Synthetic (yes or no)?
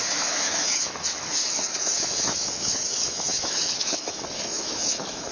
yes